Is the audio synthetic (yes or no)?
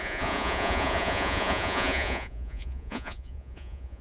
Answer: yes